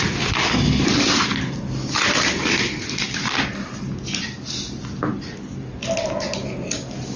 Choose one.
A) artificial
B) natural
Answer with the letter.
B